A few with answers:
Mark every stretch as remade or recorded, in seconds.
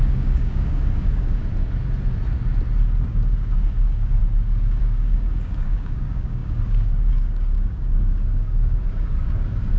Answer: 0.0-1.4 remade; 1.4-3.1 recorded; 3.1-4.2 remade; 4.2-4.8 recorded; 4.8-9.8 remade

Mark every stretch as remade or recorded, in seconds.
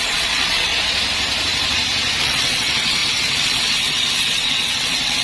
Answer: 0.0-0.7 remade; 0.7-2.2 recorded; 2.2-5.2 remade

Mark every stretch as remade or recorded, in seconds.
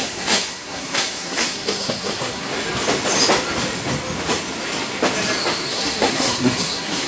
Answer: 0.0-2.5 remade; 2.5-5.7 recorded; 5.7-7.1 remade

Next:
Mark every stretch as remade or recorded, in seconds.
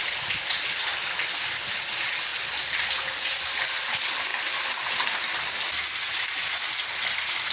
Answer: 0.0-7.5 recorded